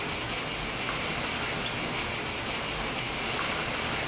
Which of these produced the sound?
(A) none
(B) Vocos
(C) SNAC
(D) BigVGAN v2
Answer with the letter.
A